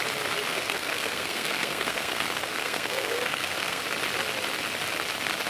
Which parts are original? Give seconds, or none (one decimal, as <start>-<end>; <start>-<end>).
0.0-0.5; 3.8-5.5